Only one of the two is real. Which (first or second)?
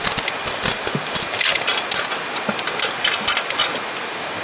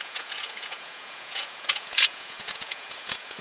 first